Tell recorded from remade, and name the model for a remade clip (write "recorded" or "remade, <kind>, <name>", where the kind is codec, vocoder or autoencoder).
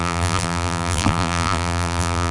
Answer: remade, vocoder, BigVGAN v2